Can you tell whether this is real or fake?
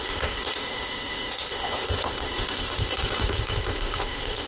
fake